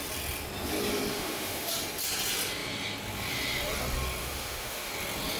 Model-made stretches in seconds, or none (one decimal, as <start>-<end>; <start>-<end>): 1.1-1.7; 4.2-4.9